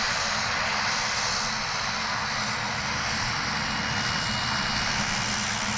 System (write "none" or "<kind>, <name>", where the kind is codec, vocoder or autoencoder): none